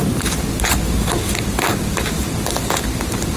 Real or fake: real